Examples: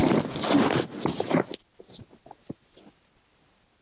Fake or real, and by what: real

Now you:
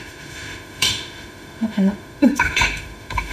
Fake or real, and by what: fake, autoencoder, DAC-VAE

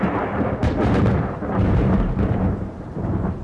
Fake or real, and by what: fake, vocoder, BigVGAN v2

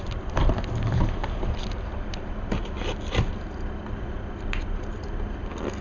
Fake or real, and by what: real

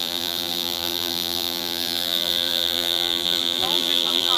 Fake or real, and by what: fake, vocoder, BigVGAN v2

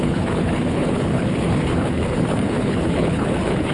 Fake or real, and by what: fake, codec, HILCodec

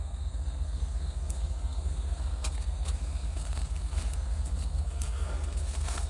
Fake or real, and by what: fake, codec, SNAC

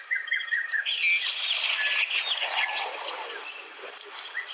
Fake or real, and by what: real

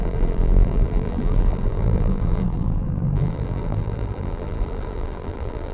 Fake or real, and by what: fake, vocoder, BigVGAN v2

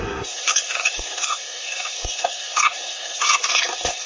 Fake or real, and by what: fake, codec, SNAC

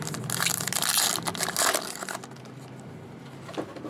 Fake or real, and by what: real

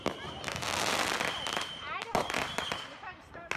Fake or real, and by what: real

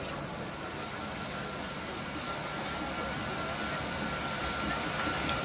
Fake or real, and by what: real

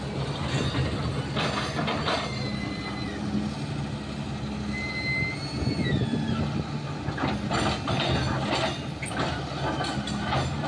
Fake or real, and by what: real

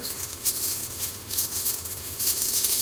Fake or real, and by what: fake, autoencoder, DAC-VAE